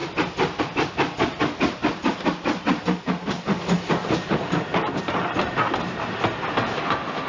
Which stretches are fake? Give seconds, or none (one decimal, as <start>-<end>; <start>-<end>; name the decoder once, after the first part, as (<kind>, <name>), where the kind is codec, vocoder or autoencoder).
none